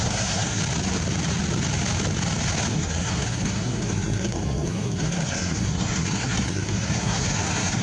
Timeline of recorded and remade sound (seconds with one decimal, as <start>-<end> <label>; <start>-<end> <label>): 0.0-0.6 remade; 0.6-2.7 recorded; 2.7-7.8 remade